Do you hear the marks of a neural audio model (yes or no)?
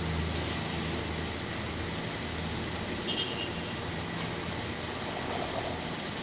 no